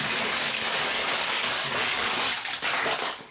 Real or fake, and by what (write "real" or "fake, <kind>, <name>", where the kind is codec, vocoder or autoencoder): fake, codec, DAC